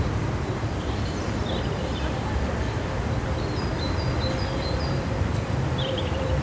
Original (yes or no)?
no